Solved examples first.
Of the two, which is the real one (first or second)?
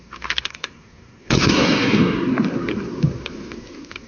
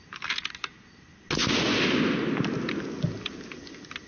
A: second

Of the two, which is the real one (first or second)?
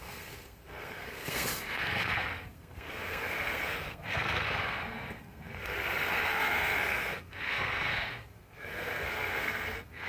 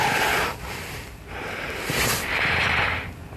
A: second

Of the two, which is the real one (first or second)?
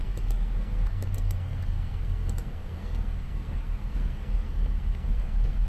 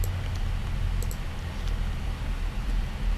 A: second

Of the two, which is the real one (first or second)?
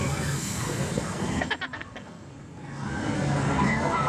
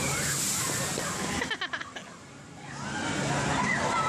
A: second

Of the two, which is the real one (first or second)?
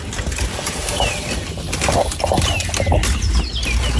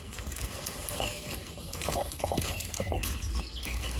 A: first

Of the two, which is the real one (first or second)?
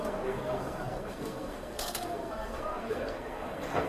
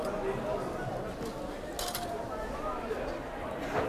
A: second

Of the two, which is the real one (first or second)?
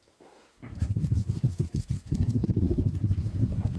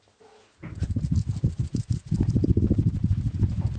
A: second